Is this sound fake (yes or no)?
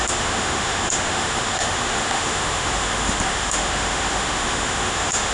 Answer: yes